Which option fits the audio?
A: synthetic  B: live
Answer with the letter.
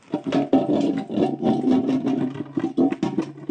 B